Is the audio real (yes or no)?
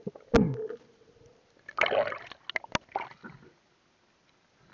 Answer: yes